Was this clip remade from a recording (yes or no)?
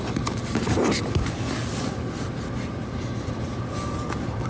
no